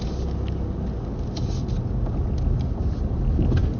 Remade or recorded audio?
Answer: recorded